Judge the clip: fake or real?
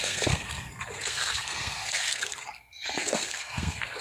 fake